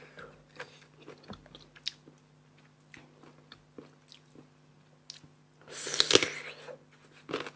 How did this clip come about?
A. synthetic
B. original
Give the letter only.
B